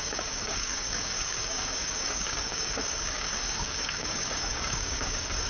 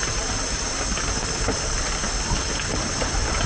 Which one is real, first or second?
second